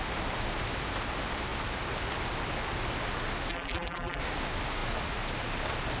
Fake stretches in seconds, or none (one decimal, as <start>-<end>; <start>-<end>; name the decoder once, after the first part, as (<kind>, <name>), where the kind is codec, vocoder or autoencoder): 3.5-4.2 (vocoder, BigVGAN v2)